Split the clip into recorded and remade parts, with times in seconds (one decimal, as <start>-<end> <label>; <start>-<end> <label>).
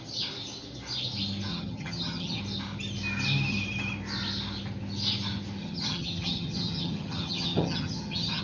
0.0-1.5 recorded; 1.5-2.4 remade; 2.4-5.6 recorded; 5.6-8.4 remade